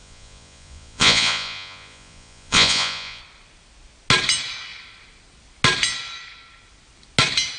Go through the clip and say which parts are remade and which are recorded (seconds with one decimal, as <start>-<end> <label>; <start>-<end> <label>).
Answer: 0.0-3.2 remade; 3.2-7.6 recorded